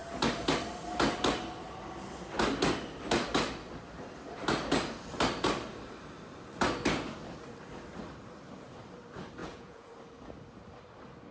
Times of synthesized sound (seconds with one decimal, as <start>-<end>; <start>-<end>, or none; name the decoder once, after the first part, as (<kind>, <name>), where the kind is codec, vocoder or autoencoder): 9.4-9.9 (vocoder, Vocos)